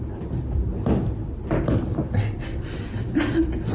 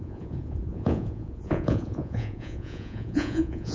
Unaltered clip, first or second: first